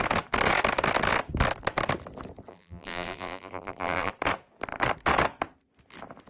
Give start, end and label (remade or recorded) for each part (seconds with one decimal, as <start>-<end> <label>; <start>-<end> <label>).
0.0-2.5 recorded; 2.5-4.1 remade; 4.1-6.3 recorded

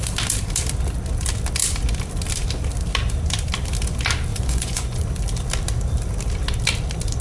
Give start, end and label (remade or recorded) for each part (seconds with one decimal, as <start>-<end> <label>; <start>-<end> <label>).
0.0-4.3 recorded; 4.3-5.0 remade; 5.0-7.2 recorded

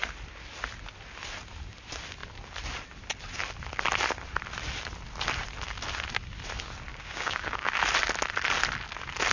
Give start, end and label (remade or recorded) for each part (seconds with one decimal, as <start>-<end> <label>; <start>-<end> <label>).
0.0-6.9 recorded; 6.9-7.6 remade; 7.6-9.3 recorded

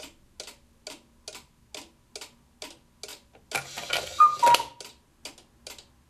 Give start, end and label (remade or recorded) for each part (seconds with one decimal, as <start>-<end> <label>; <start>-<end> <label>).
0.0-6.1 recorded